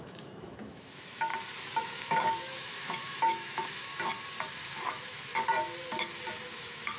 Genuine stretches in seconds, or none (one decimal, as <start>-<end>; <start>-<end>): 1.3-1.8; 3.9-4.8; 5.3-6.5